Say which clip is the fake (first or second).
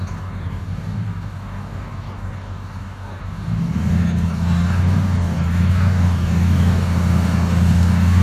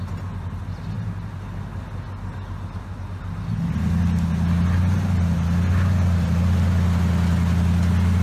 first